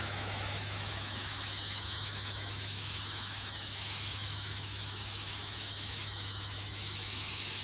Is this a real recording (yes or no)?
no